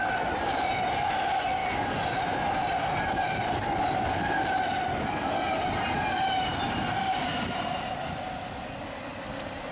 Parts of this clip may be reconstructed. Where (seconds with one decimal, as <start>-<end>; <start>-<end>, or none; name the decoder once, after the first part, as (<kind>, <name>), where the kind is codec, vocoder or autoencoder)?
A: 1.6-2.4 (vocoder, BigVGAN v2)